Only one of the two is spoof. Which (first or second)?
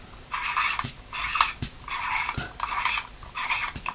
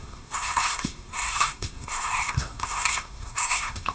second